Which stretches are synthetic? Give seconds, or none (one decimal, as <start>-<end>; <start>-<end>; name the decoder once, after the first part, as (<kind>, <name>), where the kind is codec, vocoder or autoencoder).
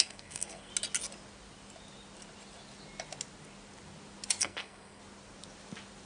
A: 0.0-0.7 (codec, SNAC); 4.4-5.0